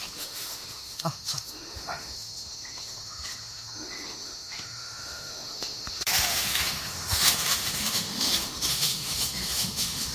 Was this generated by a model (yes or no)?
yes